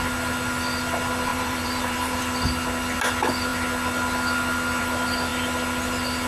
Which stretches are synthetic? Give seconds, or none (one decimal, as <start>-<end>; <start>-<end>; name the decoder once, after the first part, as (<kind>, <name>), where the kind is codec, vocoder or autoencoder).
1.3-2.2 (vocoder, BigVGAN v2)